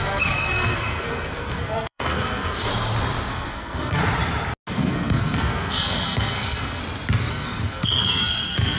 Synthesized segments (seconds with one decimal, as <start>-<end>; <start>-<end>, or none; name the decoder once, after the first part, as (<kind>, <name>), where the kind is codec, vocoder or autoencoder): 0.0-2.7 (codec, SNAC); 3.3-4.0; 4.7-6.8; 7.3-8.8

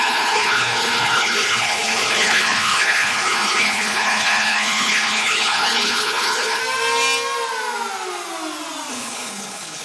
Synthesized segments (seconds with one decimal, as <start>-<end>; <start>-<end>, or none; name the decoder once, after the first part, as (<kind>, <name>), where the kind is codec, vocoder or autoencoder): 0.0-6.6 (codec, HILCodec); 8.9-9.8

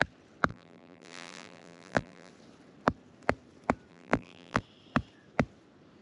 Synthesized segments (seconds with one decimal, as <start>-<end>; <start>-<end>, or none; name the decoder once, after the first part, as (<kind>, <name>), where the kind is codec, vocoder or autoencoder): 0.5-2.3 (vocoder, BigVGAN v2); 3.9-4.6

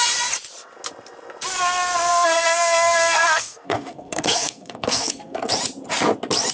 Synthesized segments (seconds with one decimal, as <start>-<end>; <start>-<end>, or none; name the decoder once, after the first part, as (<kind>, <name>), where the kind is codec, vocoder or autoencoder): 2.1-5.5 (codec, SNAC)

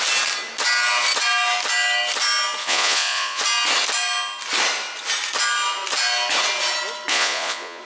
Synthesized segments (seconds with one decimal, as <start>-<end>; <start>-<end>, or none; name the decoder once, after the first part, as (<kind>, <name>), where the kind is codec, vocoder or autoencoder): 2.6-3.4 (vocoder, Vocos); 7.1-7.8

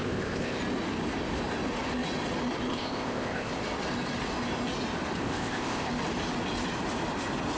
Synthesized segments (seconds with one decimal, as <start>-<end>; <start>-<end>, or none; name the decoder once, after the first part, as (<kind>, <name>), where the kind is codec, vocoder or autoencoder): 0.0-0.6 (codec, ZipCodec); 2.7-3.5; 5.2-5.9

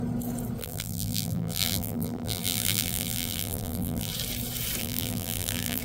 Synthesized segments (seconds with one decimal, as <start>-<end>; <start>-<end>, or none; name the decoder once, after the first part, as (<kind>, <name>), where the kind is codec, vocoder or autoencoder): 0.6-4.1 (vocoder, BigVGAN v2); 4.8-5.8

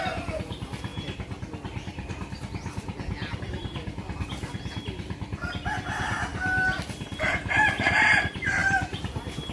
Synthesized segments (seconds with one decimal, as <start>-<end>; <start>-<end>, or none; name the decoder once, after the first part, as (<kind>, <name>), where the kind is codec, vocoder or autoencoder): 0.0-0.9 (vocoder, BigVGAN v2); 3.4-9.5